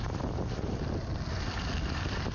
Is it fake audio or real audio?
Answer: real